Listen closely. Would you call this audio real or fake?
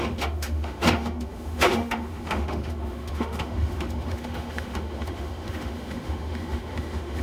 fake